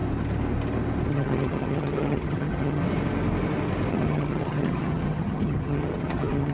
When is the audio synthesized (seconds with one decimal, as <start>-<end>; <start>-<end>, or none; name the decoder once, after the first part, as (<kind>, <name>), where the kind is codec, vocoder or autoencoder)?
1.1-2.8 (vocoder, HiFi-GAN); 3.9-6.5